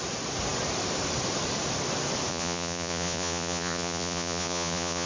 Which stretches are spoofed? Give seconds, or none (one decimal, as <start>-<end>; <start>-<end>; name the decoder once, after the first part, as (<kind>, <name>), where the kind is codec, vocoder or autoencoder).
2.3-5.1 (vocoder, Vocos)